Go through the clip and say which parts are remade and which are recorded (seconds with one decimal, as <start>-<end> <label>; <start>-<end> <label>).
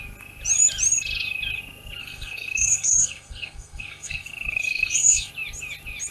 0.0-2.0 recorded; 2.0-5.3 remade; 5.3-6.1 recorded